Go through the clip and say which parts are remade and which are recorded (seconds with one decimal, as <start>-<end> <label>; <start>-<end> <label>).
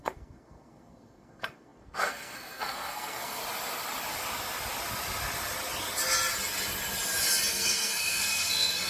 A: 0.0-3.4 remade; 3.4-7.5 recorded; 7.5-8.9 remade